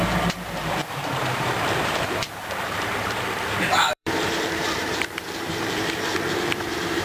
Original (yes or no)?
no